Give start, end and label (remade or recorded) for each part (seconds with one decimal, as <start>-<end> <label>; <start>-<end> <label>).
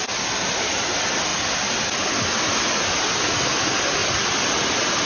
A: 0.0-5.1 recorded